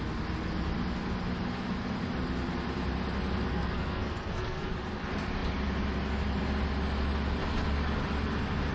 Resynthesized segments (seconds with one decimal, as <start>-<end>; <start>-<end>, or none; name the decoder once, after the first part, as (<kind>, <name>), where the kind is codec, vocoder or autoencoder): 3.5-4.7 (codec, SNAC)